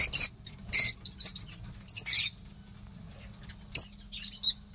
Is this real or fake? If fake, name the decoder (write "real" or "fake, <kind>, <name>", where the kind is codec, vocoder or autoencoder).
real